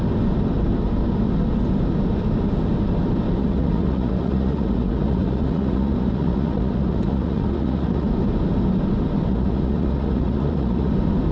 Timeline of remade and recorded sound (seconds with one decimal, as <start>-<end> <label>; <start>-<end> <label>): 0.0-3.4 recorded; 3.4-8.1 remade; 8.1-9.3 recorded; 9.3-10.9 remade; 10.9-11.3 recorded